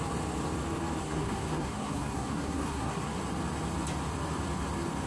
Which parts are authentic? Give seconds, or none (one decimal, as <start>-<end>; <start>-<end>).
0.0-1.0; 3.2-5.1